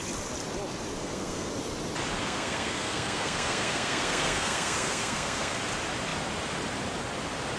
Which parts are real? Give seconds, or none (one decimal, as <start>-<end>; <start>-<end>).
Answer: 0.0-1.0; 1.5-2.2; 5.6-7.6